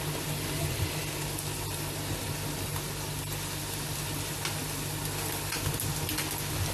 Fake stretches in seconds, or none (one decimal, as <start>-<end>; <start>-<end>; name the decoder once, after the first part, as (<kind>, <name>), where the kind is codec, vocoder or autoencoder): none